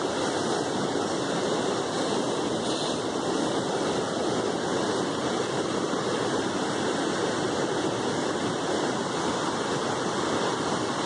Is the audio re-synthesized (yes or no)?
no